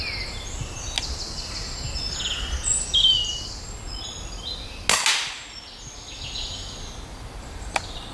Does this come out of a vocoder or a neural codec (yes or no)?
no